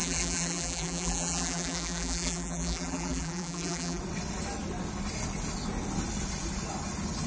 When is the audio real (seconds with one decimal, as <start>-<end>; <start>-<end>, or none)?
4.0-7.3